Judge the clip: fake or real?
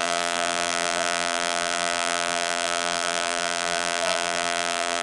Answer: fake